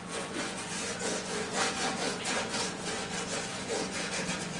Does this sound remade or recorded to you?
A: remade